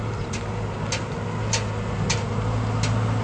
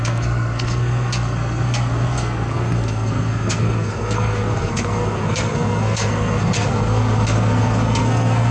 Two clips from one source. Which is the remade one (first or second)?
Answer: second